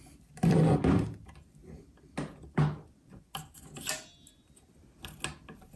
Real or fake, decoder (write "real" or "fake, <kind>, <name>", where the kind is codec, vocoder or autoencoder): real